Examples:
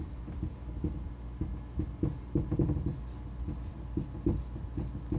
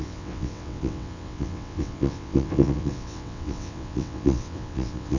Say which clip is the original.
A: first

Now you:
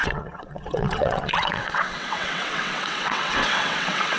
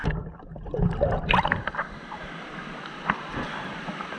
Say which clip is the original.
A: second